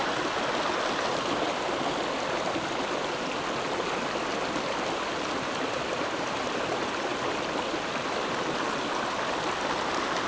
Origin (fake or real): real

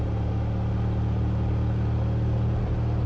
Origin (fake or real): real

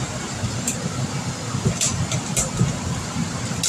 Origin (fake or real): real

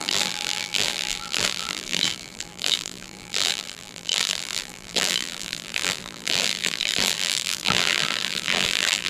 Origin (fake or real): fake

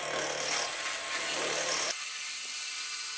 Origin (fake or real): real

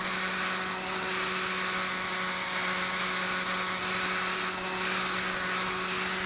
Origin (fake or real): real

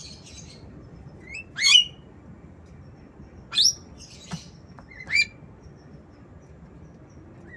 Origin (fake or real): real